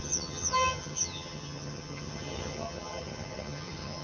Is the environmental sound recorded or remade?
remade